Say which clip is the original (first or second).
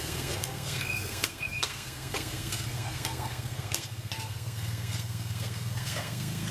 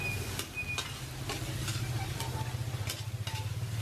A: second